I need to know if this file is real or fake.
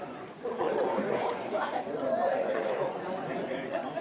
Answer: fake